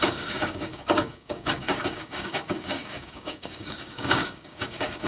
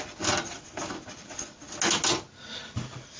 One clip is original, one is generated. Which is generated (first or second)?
first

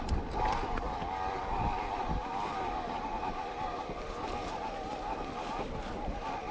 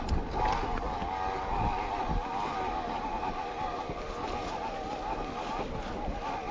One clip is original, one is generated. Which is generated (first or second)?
first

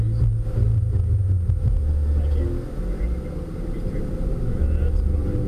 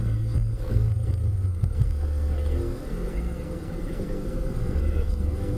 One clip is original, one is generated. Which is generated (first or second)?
second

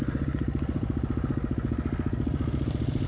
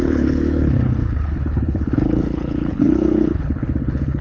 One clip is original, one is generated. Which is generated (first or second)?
second